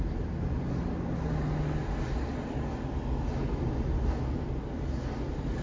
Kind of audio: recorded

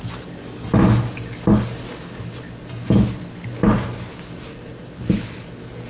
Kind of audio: recorded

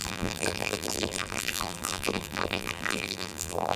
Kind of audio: remade